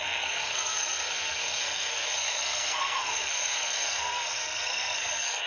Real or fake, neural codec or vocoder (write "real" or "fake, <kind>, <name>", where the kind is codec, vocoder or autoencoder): fake, codec, SNAC